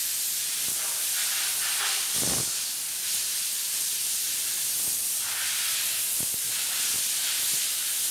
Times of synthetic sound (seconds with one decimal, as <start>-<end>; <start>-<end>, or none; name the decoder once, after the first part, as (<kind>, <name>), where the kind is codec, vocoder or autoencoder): none